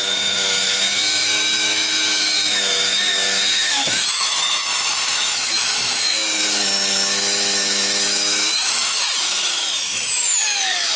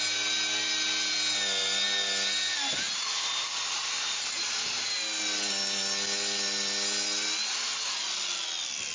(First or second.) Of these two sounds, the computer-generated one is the first